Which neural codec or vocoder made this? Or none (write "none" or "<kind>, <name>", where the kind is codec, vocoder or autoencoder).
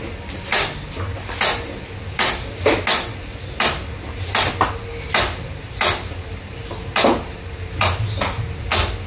none